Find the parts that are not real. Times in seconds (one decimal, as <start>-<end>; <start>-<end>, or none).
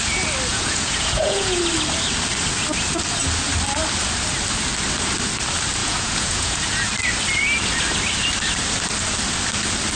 0.5-1.6; 5.8-6.9